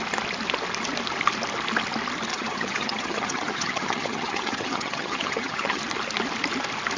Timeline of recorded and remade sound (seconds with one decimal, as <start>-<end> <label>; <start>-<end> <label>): 0.0-2.3 recorded; 2.3-5.8 remade; 5.8-7.0 recorded